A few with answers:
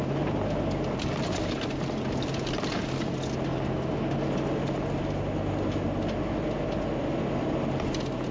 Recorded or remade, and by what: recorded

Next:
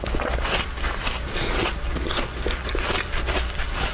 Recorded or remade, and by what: recorded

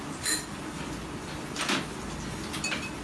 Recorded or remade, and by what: recorded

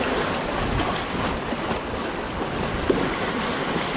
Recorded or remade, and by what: recorded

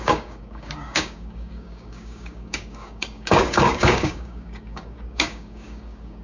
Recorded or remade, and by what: remade, codec, DAC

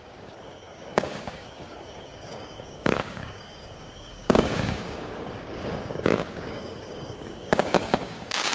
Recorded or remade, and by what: remade, codec, DAC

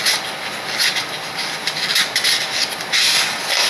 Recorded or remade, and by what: recorded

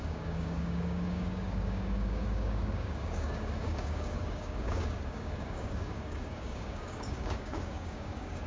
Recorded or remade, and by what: remade, codec, DAC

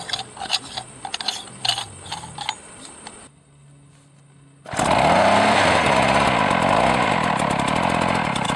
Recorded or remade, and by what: recorded